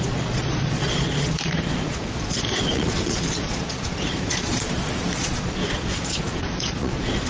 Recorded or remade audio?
remade